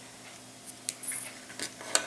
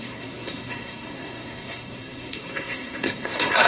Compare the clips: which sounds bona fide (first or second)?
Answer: first